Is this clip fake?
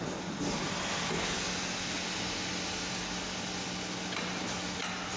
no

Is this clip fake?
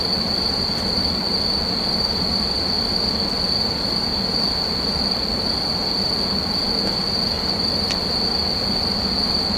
no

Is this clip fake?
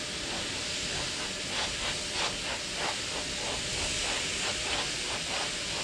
no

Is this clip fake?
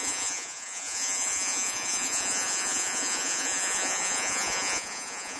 yes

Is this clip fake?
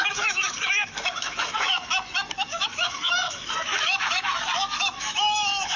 yes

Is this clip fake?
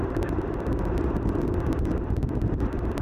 yes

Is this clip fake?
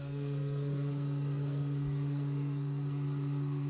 yes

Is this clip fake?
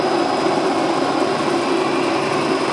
no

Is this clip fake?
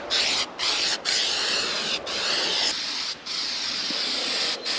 no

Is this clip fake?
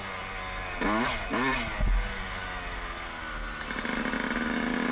no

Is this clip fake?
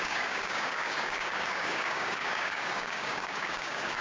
yes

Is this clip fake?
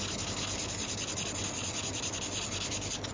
no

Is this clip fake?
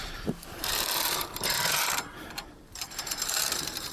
yes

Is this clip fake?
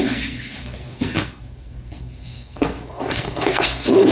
yes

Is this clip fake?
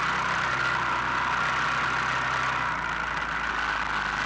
no